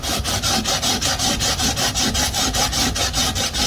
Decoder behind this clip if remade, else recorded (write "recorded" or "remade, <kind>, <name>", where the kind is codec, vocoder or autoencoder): recorded